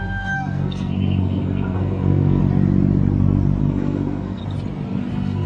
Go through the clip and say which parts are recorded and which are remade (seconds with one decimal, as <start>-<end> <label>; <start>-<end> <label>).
0.0-2.4 remade; 2.4-3.6 recorded; 3.6-4.4 remade; 4.4-5.1 recorded; 5.1-5.5 remade